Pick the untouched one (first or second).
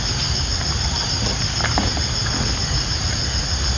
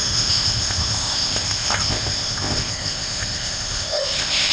first